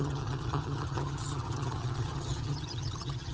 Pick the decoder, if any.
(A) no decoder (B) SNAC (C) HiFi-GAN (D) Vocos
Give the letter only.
C